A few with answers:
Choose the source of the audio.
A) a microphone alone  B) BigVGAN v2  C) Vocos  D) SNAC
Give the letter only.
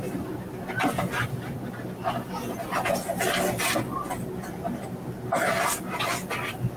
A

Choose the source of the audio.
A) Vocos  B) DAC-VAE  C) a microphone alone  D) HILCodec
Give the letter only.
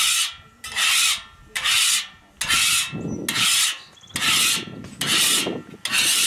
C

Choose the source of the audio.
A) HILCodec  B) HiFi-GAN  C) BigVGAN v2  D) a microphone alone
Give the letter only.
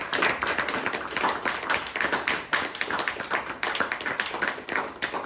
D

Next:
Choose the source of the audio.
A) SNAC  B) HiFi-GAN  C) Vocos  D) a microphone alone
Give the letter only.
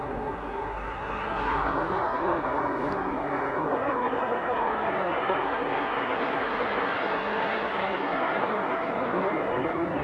A